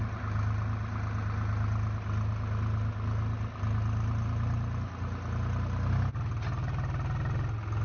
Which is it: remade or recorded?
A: recorded